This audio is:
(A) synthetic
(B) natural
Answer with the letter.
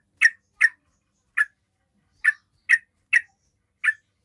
B